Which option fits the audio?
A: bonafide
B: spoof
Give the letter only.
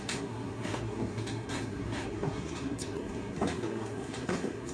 B